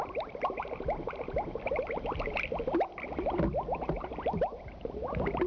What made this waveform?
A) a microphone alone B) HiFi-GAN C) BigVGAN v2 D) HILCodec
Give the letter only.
C